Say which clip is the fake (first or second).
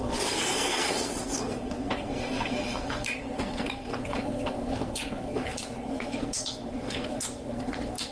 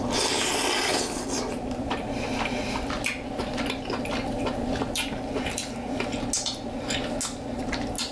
first